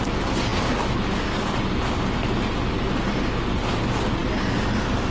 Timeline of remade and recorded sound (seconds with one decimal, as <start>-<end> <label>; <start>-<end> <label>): 0.0-5.1 recorded